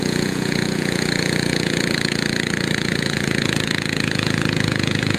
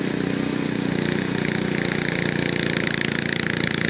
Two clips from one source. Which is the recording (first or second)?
second